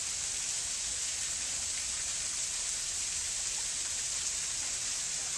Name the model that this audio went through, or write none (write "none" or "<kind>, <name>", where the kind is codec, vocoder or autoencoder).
none